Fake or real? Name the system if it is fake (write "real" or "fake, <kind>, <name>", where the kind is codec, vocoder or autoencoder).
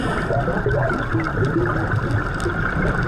real